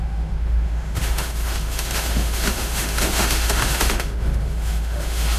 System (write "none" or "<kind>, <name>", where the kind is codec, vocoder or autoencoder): autoencoder, DAC-VAE